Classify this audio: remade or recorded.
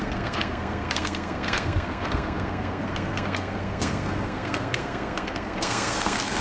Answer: remade